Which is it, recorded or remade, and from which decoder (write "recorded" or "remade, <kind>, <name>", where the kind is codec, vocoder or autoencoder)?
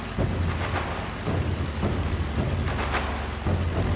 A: recorded